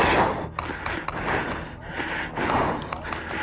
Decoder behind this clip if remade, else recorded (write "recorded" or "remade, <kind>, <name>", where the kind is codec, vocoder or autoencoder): recorded